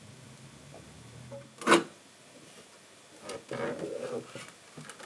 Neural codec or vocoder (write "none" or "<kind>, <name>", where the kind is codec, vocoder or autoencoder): none